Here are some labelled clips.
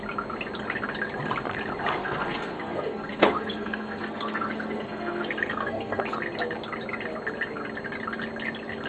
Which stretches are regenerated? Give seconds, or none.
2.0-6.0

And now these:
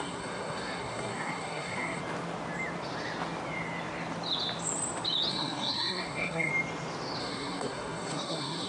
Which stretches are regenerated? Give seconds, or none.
0.0-2.0; 5.3-6.5; 7.2-8.7

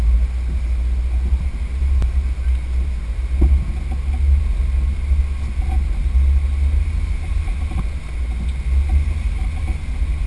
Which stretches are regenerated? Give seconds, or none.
none

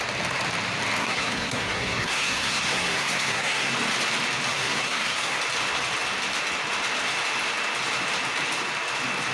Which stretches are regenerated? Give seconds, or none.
1.0-3.7; 4.5-5.4

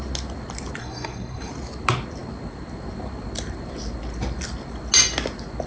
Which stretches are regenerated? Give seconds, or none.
0.8-1.5

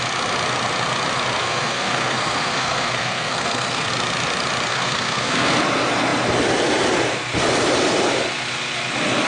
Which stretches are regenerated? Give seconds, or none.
1.4-3.9; 4.7-5.5

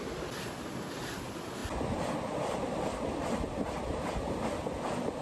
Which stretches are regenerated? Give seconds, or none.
none